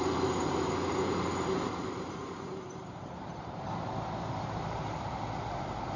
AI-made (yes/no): yes